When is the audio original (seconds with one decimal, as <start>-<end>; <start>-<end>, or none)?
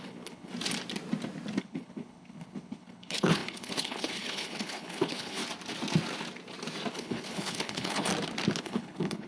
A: 0.5-1.6; 5.4-6.9; 8.1-8.6